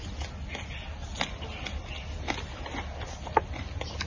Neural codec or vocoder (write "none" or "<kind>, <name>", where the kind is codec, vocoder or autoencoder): none